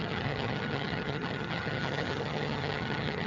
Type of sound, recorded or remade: remade